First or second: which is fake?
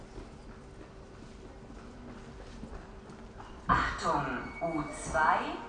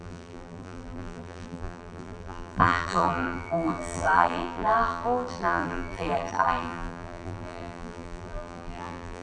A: second